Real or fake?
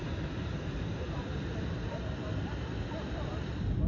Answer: fake